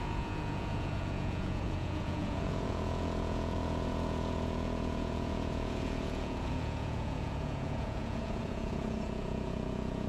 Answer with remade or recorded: remade